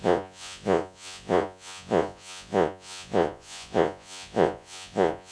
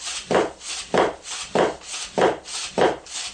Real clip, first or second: second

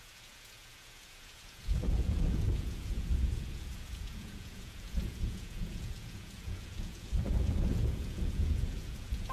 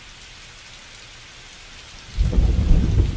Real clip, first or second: second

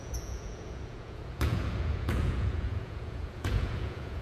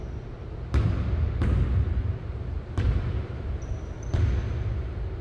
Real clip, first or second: second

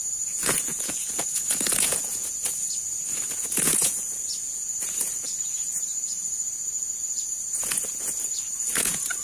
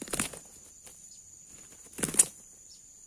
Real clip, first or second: second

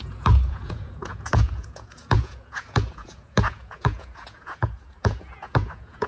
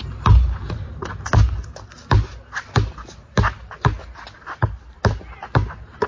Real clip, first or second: second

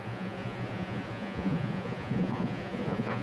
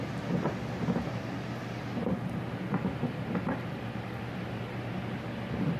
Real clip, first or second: second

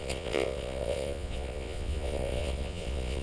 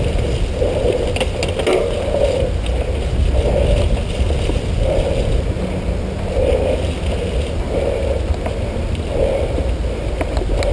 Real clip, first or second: second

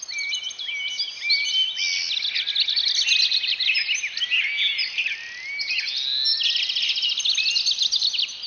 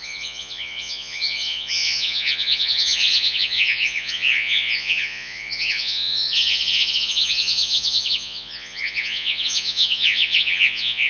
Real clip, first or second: first